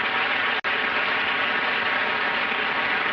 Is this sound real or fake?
real